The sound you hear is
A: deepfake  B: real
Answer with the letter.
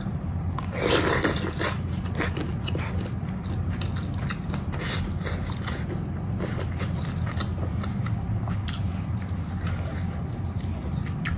B